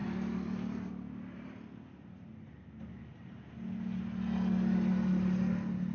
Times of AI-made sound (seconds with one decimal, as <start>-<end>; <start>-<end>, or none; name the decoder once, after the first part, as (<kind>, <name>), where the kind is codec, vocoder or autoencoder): none